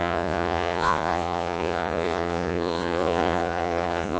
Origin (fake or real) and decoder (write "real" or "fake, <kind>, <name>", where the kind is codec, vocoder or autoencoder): fake, vocoder, Vocos